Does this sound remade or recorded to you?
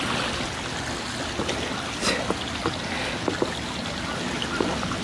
recorded